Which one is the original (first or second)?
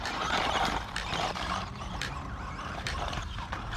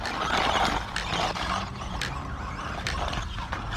second